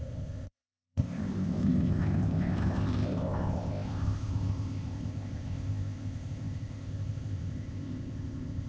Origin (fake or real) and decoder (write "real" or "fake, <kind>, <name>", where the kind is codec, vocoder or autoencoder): fake, codec, ZipCodec